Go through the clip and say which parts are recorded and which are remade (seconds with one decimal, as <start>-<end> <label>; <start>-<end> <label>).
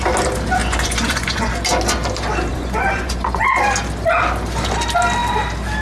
0.0-0.6 recorded; 0.6-1.5 remade; 1.5-2.5 recorded; 2.5-3.4 remade; 3.4-5.8 recorded